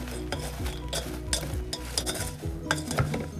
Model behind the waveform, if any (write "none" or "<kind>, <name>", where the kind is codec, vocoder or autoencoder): none